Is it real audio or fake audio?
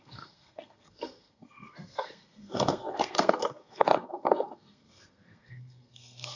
fake